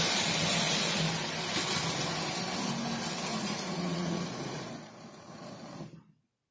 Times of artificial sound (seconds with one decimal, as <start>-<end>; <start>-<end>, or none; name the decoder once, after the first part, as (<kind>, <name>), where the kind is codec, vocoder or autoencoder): 3.3-5.7 (vocoder, Vocos)